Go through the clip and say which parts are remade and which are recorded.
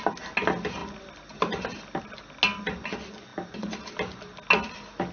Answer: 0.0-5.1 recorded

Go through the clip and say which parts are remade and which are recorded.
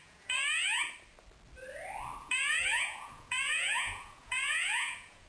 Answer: 0.0-0.8 remade; 0.8-2.2 recorded; 2.2-5.3 remade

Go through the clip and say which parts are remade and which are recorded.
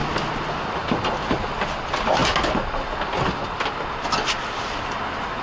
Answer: 0.0-1.3 recorded; 1.3-2.2 remade; 2.2-5.4 recorded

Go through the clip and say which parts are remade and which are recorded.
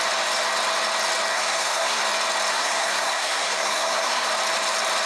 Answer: 0.0-1.3 recorded; 1.3-2.0 remade; 2.0-2.5 recorded; 2.5-4.3 remade; 4.3-5.1 recorded